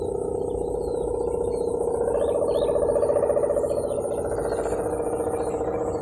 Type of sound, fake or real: real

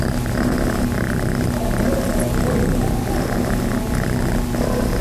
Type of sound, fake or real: real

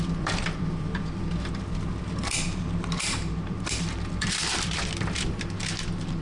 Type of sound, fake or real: fake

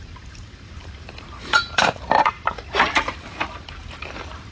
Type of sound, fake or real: fake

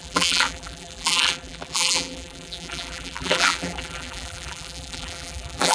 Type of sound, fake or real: fake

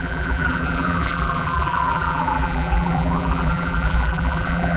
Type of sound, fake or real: fake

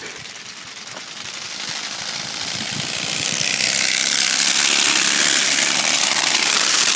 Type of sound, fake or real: real